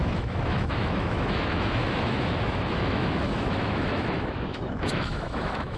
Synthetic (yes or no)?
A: yes